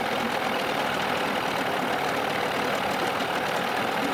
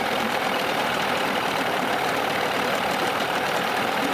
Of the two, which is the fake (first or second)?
second